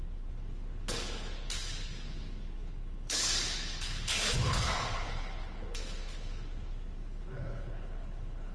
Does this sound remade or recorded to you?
remade